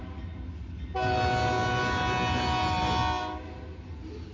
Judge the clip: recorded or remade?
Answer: recorded